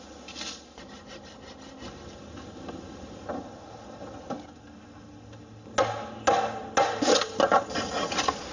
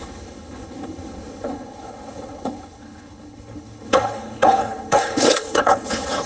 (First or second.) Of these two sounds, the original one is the first